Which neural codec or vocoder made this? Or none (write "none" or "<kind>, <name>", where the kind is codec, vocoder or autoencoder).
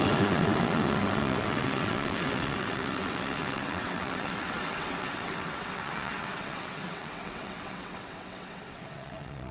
vocoder, WaveNeXt